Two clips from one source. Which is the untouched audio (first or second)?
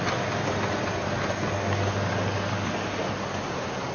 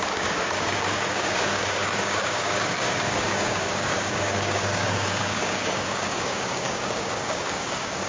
first